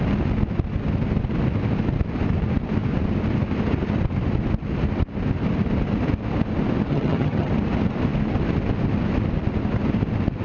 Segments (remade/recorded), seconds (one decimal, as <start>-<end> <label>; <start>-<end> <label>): 0.0-6.9 recorded; 6.9-7.5 remade; 7.5-10.4 recorded